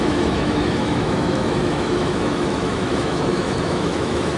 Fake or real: fake